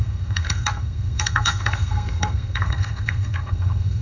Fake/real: fake